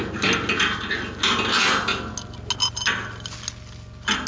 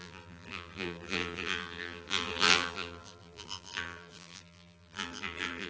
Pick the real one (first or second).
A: first